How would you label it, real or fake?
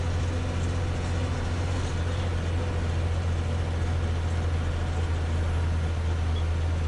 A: real